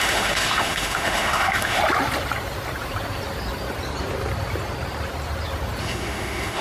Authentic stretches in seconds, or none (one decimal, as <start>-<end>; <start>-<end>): 1.8-5.8